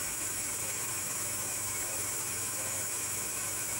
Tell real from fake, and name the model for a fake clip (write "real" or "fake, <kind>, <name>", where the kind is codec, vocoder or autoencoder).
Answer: fake, autoencoder, DAC-VAE